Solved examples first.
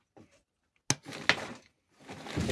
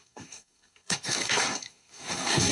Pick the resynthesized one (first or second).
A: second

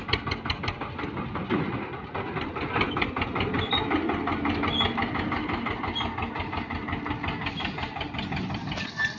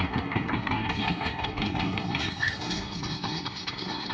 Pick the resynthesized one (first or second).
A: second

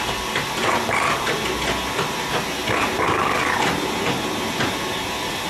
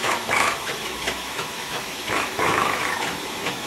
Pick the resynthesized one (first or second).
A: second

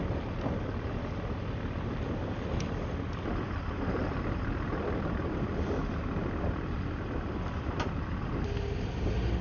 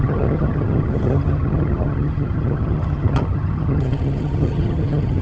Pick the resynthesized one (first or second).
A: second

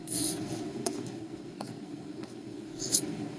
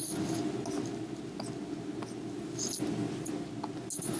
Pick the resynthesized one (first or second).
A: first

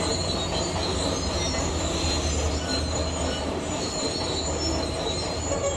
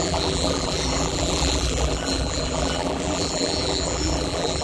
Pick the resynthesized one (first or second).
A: second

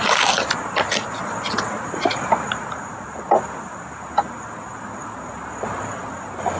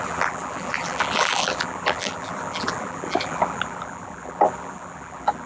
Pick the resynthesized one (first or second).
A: second